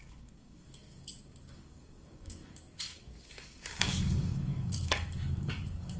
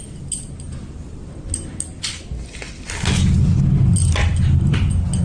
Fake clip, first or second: first